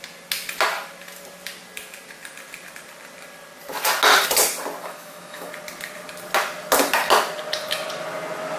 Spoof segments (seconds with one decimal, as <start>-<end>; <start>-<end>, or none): 4.8-5.5